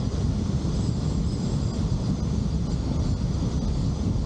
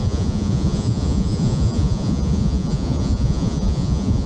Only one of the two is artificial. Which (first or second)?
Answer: second